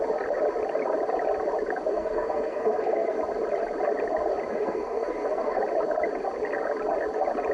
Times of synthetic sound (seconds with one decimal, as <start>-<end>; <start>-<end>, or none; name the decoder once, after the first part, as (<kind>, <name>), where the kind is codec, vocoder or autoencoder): 1.9-3.2 (codec, SNAC); 4.5-5.6